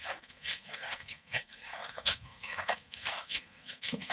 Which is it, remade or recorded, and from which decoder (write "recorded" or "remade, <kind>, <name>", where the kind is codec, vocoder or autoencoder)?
remade, codec, SNAC